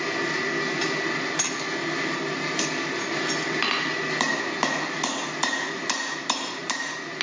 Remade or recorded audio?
recorded